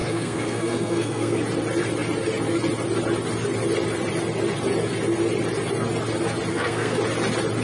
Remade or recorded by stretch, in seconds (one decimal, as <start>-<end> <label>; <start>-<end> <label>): 0.0-1.4 remade; 1.4-6.5 recorded; 6.5-7.0 remade; 7.0-7.6 recorded